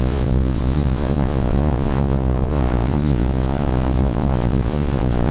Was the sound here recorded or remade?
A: remade